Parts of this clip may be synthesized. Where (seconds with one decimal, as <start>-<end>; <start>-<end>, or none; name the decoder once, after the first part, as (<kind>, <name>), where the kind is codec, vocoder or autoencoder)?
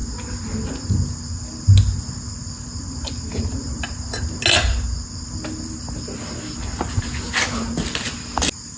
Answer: none